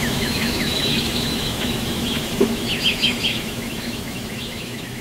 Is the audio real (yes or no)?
no